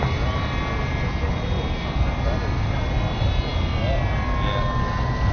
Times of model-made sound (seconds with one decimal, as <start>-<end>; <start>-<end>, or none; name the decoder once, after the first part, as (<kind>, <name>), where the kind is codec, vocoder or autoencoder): none